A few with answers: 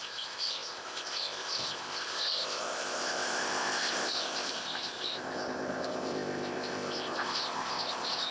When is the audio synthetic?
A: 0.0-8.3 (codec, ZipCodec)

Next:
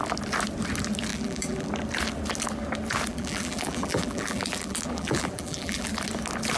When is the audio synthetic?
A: 1.1-1.7 (vocoder, BigVGAN v2); 3.1-5.9

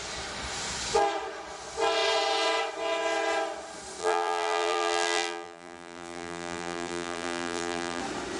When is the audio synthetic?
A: 4.0-8.0 (vocoder, BigVGAN v2)

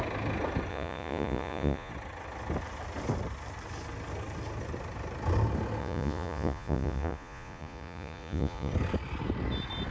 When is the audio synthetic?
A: 0.7-1.9 (vocoder, Vocos); 5.8-8.7

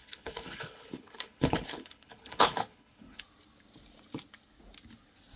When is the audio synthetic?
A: 0.0-3.2 (codec, HILCodec)

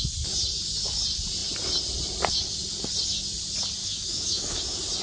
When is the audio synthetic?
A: 3.8-4.6 (autoencoder, DAC-VAE)

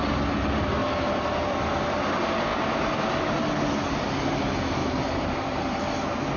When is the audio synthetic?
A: 0.8-1.5 (vocoder, BigVGAN v2); 4.8-5.8

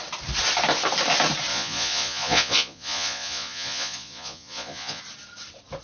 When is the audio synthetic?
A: 1.5-5.0 (vocoder, Vocos)